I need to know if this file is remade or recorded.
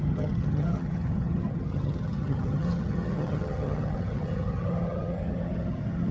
remade